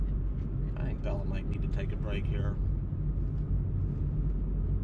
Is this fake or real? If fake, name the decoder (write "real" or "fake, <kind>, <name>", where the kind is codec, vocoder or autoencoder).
real